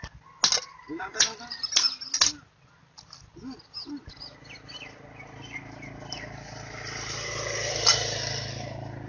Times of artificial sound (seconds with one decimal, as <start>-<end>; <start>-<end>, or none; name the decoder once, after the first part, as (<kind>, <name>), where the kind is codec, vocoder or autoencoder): none